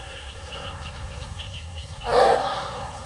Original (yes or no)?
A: no